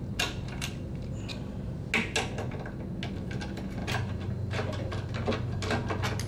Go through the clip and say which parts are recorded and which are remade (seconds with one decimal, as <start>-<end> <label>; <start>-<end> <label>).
0.0-1.3 remade; 1.3-3.1 recorded; 3.1-4.9 remade; 4.9-6.3 recorded